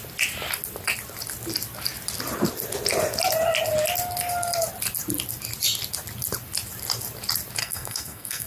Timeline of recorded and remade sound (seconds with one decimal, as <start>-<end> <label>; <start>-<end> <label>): 0.0-7.6 recorded; 7.6-8.5 remade